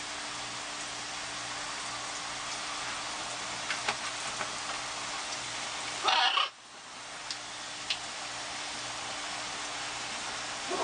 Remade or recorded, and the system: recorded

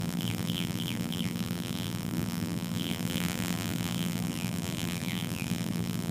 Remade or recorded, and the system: remade, vocoder, BigVGAN v2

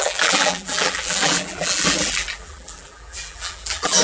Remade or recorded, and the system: remade, vocoder, BigVGAN v2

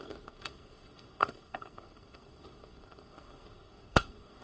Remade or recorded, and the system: remade, codec, SNAC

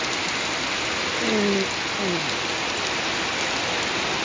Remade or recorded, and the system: recorded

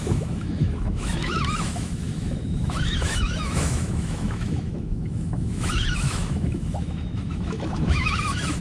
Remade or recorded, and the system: remade, autoencoder, DAC-VAE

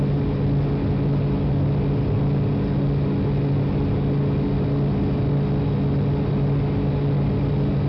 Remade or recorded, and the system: recorded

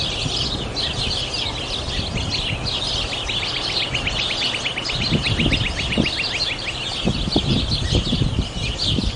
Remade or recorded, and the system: recorded